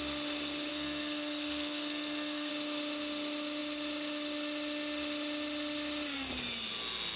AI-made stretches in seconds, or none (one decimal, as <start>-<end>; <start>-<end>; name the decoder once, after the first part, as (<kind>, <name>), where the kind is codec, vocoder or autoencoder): 0.7-2.5 (codec, SNAC)